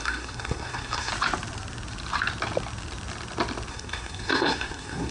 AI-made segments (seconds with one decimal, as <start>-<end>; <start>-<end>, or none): 0.0-1.1; 3.7-5.1

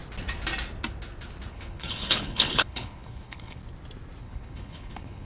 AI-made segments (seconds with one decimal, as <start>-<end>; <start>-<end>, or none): 1.5-3.6; 4.2-5.3

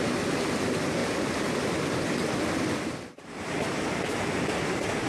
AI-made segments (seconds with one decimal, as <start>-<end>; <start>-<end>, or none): none

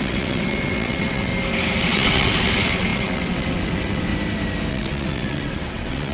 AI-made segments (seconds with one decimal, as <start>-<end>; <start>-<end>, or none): 0.0-1.3; 1.8-4.1; 4.7-6.1

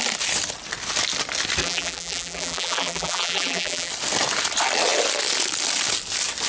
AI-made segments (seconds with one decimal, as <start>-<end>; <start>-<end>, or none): 1.6-3.9

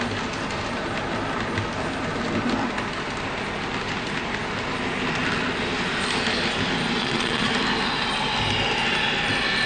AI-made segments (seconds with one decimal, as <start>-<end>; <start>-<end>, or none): 7.0-7.5